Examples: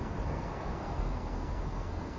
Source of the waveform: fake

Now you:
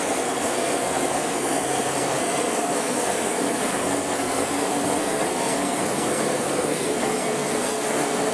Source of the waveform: fake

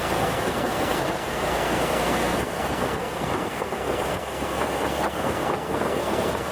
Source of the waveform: fake